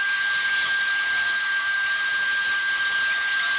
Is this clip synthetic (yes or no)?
no